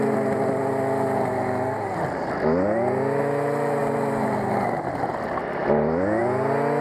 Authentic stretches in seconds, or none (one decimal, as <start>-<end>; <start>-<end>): 0.0-6.8